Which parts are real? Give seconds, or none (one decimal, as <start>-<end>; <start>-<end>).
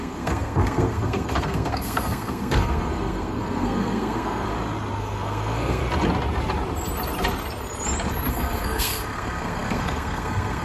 4.5-5.0; 5.8-8.3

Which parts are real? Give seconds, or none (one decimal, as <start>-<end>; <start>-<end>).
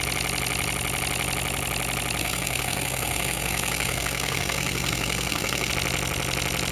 0.0-2.2; 5.7-6.7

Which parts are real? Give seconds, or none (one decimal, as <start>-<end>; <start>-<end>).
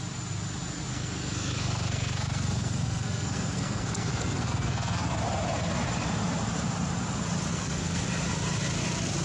0.0-0.9; 5.2-7.5; 8.0-9.2